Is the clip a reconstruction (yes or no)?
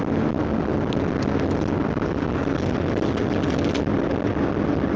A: no